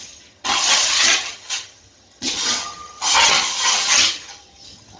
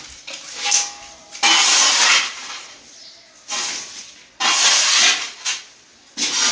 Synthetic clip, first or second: first